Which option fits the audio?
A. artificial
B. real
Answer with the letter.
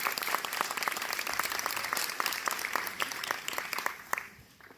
A